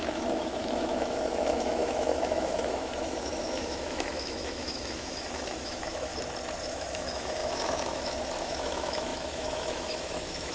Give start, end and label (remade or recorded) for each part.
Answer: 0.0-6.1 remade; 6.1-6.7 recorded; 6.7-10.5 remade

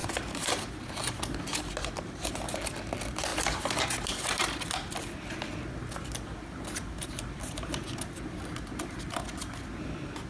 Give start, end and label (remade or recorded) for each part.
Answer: 0.0-10.3 recorded

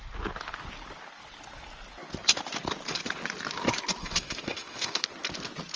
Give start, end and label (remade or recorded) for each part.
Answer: 0.0-4.0 recorded; 4.0-5.0 remade; 5.0-5.8 recorded

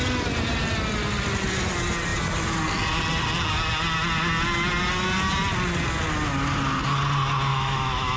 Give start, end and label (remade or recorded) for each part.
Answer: 0.0-7.5 recorded; 7.5-8.2 remade

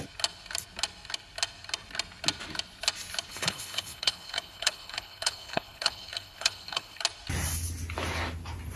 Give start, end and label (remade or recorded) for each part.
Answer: 0.0-3.3 recorded; 3.3-7.0 remade; 7.0-8.8 recorded

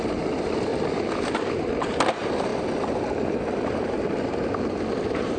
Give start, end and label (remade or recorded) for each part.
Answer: 0.0-0.7 remade; 0.7-2.1 recorded; 2.1-5.4 remade

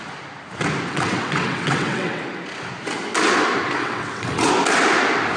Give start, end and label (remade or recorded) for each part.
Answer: 0.0-0.9 recorded; 0.9-2.2 remade; 2.2-3.8 recorded; 3.8-4.5 remade; 4.5-5.4 recorded